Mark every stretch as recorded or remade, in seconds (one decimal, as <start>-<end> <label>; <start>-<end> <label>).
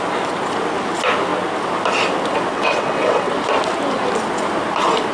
0.0-2.5 recorded; 2.5-3.3 remade; 3.3-5.1 recorded